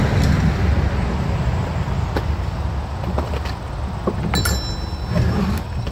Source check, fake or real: real